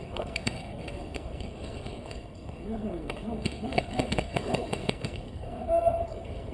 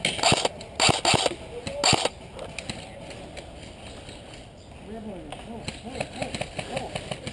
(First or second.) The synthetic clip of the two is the first